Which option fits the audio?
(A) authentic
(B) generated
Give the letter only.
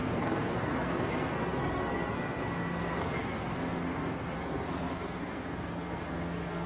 B